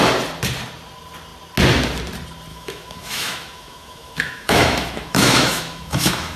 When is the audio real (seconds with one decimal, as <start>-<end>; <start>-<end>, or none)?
0.0-2.5